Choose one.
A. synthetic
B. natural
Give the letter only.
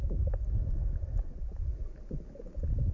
B